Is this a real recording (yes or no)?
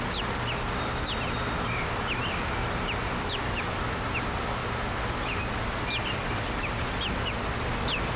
yes